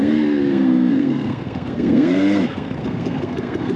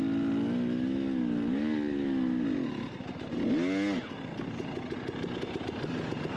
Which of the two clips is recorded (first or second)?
second